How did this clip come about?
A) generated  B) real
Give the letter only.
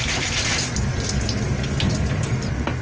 B